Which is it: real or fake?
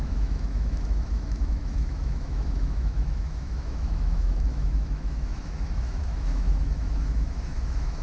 fake